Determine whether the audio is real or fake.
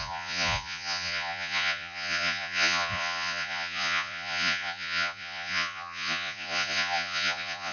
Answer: fake